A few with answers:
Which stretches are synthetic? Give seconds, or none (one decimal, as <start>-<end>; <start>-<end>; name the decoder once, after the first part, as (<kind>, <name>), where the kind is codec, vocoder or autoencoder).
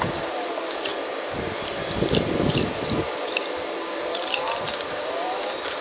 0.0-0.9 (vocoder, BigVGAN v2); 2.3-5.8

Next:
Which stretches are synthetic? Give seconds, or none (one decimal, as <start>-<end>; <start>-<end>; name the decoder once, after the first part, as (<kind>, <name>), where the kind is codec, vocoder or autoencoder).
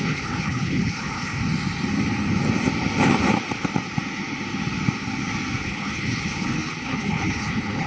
0.0-1.4 (codec, HILCodec); 5.6-7.9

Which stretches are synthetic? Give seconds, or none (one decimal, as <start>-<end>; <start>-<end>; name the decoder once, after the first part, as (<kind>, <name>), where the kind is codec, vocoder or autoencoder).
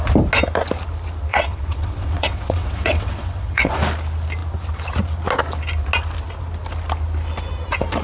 1.3-3.7 (vocoder, WaveNeXt)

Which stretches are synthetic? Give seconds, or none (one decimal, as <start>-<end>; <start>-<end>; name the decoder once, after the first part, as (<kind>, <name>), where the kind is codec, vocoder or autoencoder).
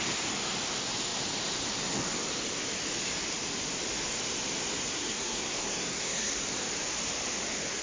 4.9-6.3 (codec, SNAC)